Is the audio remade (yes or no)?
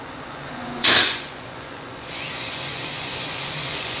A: yes